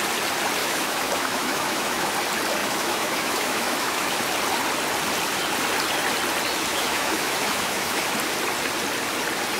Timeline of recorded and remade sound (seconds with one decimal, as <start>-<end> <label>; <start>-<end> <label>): 0.0-0.6 recorded; 0.6-2.1 remade; 2.1-2.6 recorded; 2.6-4.2 remade; 4.2-6.7 recorded; 6.7-8.0 remade; 8.0-9.6 recorded